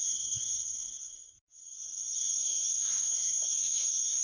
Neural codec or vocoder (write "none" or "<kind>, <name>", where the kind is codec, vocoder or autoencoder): codec, SNAC